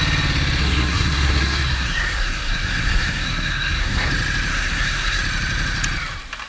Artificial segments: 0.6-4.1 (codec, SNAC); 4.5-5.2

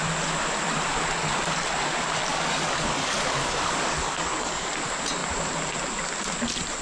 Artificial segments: 2.3-4.7 (codec, DAC)

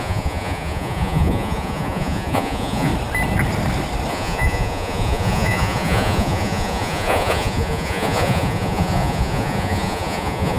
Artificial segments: 0.0-2.9 (vocoder, Vocos); 4.1-10.6

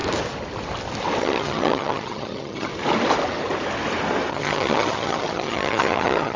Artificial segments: 1.2-2.7 (vocoder, HiFi-GAN); 4.3-6.4

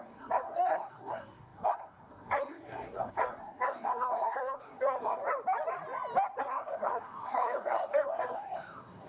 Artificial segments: 0.0-5.2 (codec, SNAC); 6.4-9.1

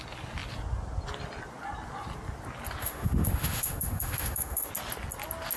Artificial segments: 2.8-4.7 (autoencoder, DAC-VAE)

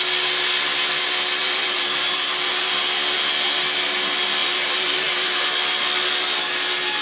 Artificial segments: 1.4-2.7 (vocoder, BigVGAN v2); 4.4-5.4